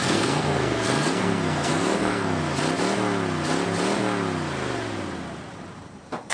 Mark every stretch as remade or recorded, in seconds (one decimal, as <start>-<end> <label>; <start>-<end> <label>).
0.0-2.4 remade; 2.4-6.3 recorded